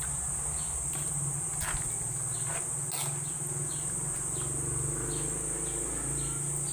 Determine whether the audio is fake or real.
real